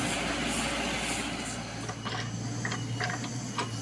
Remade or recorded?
recorded